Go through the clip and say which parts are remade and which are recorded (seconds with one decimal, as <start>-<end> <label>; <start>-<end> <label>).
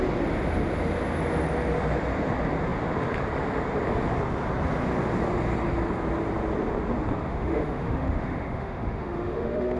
0.0-7.3 recorded; 7.3-9.8 remade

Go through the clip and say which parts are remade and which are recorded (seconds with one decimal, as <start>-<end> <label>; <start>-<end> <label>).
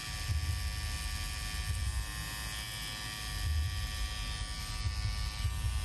0.0-5.8 recorded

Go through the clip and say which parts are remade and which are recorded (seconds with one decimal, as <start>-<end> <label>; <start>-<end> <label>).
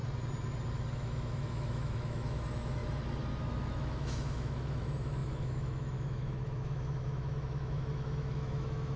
0.0-0.9 recorded; 0.9-2.8 remade; 2.8-3.4 recorded; 3.4-9.0 remade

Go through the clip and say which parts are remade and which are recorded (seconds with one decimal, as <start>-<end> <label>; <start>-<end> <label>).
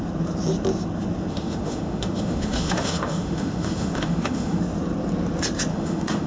0.0-1.3 recorded; 1.3-4.6 remade; 4.6-5.7 recorded; 5.7-6.3 remade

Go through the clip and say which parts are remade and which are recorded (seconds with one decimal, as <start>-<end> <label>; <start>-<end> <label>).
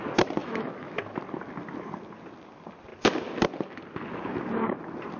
0.0-0.4 recorded; 0.4-1.0 remade; 1.0-5.2 recorded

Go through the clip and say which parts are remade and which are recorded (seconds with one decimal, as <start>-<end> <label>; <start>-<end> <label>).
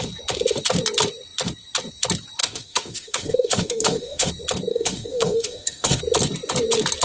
0.0-2.4 recorded; 2.4-4.3 remade; 4.3-4.7 recorded; 4.7-6.0 remade; 6.0-7.0 recorded